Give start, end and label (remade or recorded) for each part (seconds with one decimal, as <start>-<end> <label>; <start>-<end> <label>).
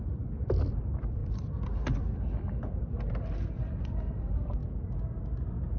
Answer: 0.0-4.6 remade; 4.6-5.8 recorded